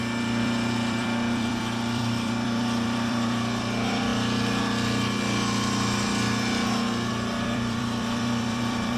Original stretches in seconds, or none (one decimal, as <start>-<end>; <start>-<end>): 4.1-7.1